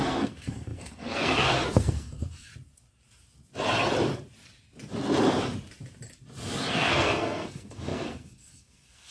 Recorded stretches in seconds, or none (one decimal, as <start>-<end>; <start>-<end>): 2.5-6.7